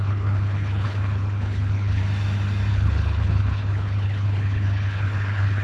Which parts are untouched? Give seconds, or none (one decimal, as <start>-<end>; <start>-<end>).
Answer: 2.0-2.7